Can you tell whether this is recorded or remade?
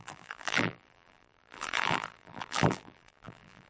remade